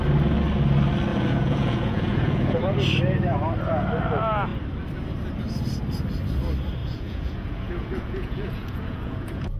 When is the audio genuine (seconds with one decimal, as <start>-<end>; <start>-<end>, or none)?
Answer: 0.0-1.1; 2.6-6.8